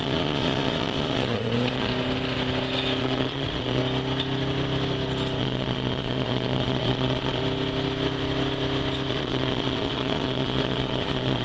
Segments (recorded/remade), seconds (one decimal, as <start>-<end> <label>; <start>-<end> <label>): 0.0-1.9 remade; 1.9-3.0 recorded; 3.0-3.8 remade; 3.8-5.4 recorded; 5.4-7.4 remade; 7.4-9.1 recorded; 9.1-11.4 remade